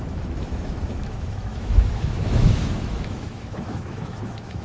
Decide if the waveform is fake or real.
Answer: fake